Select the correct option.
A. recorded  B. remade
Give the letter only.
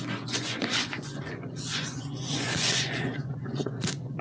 B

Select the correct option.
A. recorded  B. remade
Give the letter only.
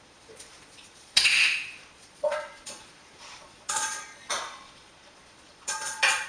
B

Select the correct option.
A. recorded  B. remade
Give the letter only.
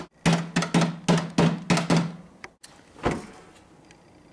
A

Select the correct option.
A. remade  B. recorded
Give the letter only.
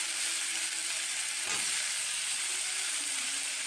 B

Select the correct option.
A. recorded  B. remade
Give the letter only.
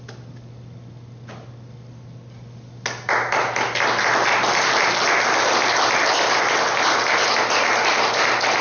A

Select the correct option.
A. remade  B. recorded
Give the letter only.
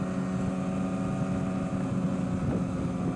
B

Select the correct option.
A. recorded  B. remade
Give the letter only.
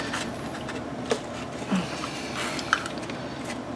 A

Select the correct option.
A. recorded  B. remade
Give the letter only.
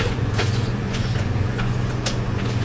B